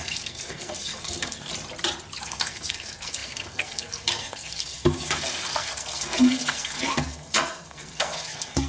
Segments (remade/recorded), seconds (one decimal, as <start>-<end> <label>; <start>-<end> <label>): 0.0-1.5 remade; 1.5-2.2 recorded; 2.2-8.7 remade